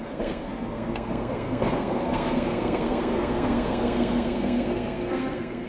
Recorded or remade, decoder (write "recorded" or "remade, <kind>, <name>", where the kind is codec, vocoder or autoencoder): remade, codec, SNAC